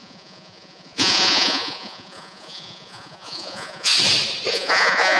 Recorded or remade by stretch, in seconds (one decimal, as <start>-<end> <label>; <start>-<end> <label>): 0.0-3.9 remade; 3.9-4.5 recorded; 4.5-5.2 remade